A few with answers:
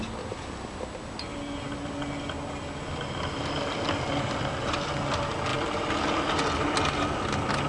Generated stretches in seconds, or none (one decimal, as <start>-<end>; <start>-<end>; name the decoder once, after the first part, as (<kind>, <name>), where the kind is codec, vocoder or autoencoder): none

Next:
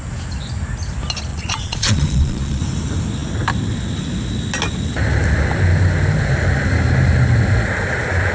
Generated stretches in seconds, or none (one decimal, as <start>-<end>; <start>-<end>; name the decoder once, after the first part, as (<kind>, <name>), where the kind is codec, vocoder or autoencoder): 1.3-2.6 (vocoder, Vocos)

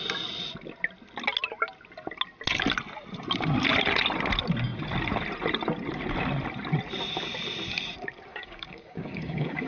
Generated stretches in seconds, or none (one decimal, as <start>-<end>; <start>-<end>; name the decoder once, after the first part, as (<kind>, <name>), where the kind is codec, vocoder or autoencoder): 8.3-9.7 (codec, DAC)

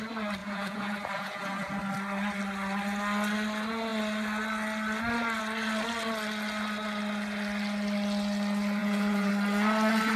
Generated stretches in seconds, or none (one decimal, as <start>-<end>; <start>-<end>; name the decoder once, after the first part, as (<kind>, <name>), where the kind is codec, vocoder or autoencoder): 0.4-1.7 (vocoder, Vocos); 8.8-9.3